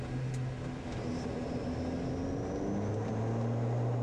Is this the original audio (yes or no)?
yes